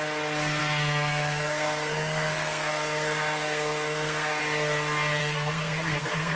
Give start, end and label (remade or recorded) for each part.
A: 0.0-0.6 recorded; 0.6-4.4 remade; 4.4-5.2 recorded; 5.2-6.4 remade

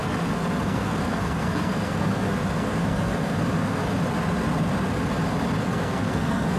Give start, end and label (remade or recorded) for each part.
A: 0.0-3.8 remade; 3.8-5.6 recorded; 5.6-6.6 remade

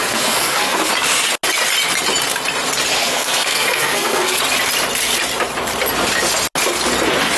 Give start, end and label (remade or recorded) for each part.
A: 0.0-0.9 remade; 0.9-3.0 recorded; 3.0-4.4 remade; 4.4-7.4 recorded

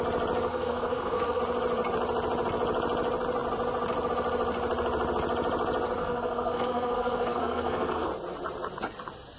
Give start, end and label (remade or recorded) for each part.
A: 0.0-0.5 recorded; 0.5-1.4 remade; 1.4-6.0 recorded; 6.0-8.1 remade; 8.1-9.4 recorded

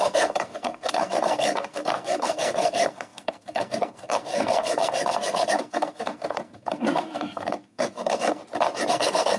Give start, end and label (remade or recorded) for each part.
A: 0.0-8.4 remade; 8.4-8.9 recorded; 8.9-9.4 remade

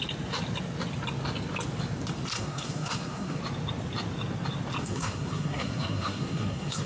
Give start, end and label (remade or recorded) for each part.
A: 0.0-2.3 recorded; 2.3-3.4 remade; 3.4-4.8 recorded; 4.8-6.9 remade